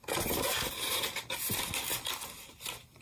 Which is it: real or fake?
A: real